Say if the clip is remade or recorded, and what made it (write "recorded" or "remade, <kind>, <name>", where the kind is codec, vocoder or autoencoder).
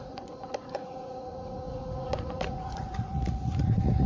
remade, vocoder, Vocos